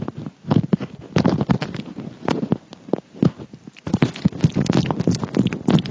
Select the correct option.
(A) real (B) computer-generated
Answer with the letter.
A